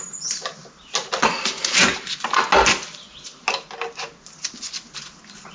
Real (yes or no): yes